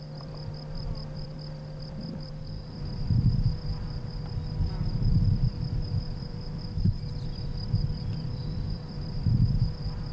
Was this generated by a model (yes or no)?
yes